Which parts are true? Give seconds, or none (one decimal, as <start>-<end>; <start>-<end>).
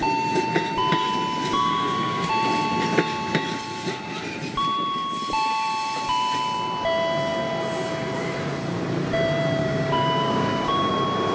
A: 0.0-1.6; 2.3-9.6; 10.9-11.3